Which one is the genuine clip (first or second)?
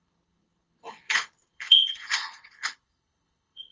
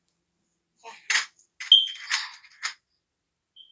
second